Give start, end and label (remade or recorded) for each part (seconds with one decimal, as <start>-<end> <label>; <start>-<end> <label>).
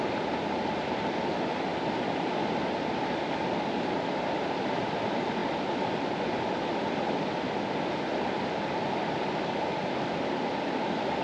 0.0-11.2 recorded